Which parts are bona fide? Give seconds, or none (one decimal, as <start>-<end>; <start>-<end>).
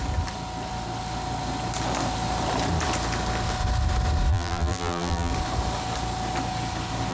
0.0-4.3; 5.3-7.1